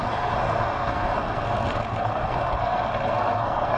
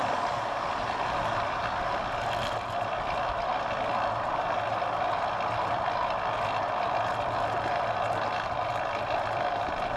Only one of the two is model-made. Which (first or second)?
first